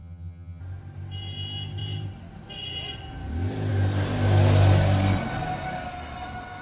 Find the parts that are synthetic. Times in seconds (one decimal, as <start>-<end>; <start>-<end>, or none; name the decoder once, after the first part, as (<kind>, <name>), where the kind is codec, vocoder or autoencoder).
0.0-0.6 (vocoder, HiFi-GAN)